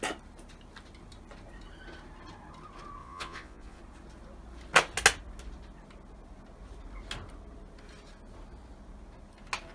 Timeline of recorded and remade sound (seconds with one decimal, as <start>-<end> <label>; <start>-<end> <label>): 0.0-3.0 recorded; 3.0-3.8 remade; 3.8-9.7 recorded